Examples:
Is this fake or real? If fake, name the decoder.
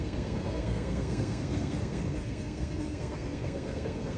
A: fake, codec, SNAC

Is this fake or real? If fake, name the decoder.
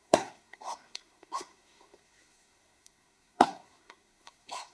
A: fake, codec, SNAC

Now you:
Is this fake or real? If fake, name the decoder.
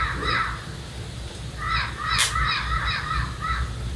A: real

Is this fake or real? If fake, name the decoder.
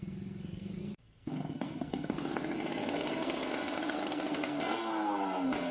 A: fake, codec, SNAC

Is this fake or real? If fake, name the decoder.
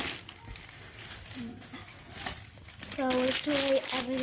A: real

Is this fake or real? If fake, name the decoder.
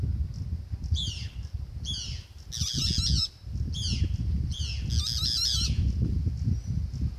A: real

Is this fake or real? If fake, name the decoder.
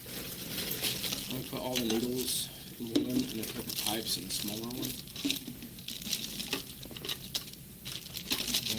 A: real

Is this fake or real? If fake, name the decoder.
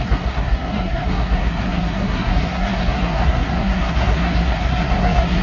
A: fake, codec, SNAC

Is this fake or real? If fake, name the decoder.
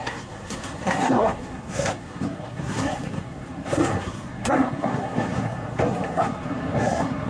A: fake, codec, SNAC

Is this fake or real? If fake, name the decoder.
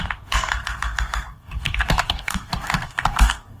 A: fake, codec, SNAC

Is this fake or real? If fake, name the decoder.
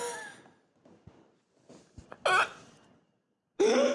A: real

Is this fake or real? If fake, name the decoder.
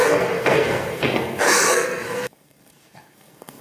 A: fake, codec, SNAC